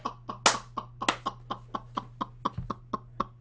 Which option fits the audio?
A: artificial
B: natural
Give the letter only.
B